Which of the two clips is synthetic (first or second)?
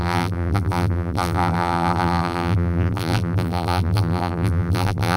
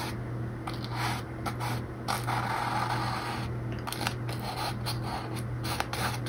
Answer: first